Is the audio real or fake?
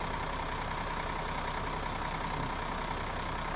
real